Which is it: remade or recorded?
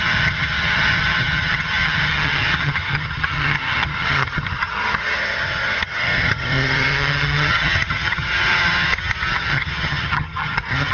remade